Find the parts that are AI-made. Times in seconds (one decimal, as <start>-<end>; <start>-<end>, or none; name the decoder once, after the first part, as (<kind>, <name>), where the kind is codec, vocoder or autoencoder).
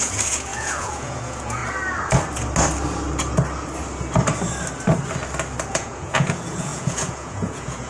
0.0-1.6 (vocoder, Vocos); 5.7-7.9